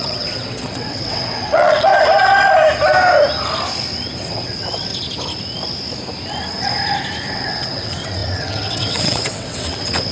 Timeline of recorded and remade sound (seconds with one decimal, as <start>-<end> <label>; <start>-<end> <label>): 0.0-1.9 remade; 1.9-4.2 recorded; 4.2-4.9 remade; 4.9-7.3 recorded; 7.3-10.1 remade